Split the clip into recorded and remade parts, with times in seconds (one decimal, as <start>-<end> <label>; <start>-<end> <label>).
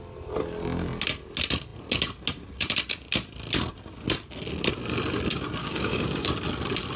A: 0.0-5.6 recorded; 5.6-6.3 remade; 6.3-7.0 recorded